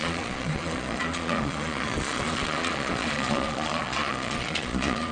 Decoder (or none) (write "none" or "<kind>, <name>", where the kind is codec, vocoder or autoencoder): vocoder, Vocos